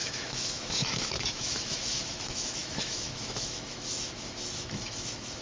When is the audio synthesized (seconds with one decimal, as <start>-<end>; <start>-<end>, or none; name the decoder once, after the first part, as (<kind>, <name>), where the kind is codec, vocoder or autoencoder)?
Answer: 0.0-5.4 (autoencoder, DAC-VAE)